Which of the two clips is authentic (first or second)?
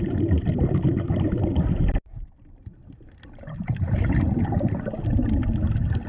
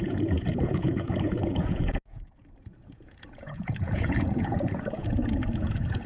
first